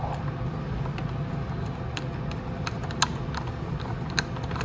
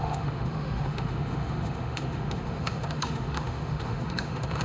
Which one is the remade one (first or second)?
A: second